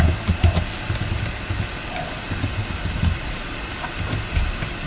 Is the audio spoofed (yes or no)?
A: no